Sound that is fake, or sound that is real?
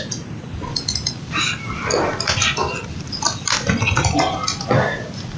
real